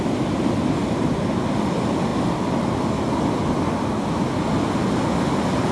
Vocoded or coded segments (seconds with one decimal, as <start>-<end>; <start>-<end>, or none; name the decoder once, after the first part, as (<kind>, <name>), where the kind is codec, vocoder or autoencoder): none